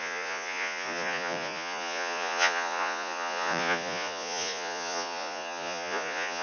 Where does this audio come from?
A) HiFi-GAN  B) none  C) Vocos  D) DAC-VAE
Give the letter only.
C